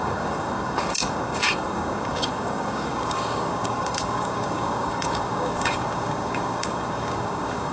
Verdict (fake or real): fake